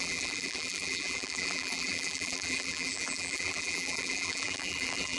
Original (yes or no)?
no